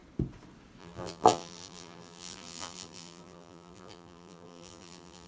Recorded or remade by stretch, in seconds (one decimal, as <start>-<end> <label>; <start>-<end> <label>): 0.0-0.8 recorded; 0.8-5.3 remade